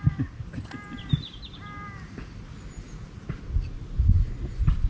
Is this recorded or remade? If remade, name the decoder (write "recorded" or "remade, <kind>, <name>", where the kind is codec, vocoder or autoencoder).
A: recorded